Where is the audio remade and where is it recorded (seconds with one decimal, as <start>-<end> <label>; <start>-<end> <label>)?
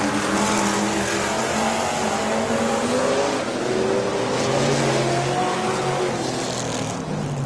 0.0-7.5 recorded